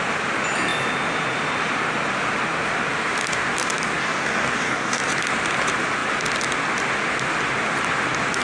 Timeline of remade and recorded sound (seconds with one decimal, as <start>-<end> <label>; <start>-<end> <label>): 0.0-4.0 recorded; 4.0-5.0 remade; 5.0-8.4 recorded